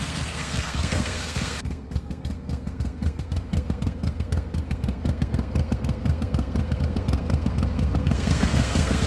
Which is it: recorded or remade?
remade